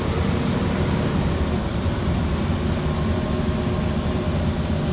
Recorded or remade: recorded